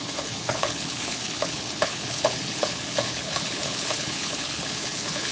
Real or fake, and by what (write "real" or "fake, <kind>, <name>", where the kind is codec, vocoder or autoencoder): fake, codec, HILCodec